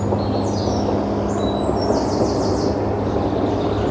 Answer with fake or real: real